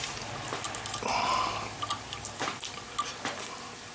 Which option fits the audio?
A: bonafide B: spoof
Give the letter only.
A